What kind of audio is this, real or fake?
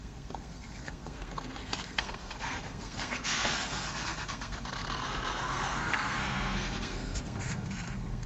fake